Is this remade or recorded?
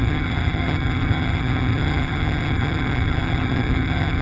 remade